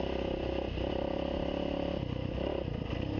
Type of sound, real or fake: real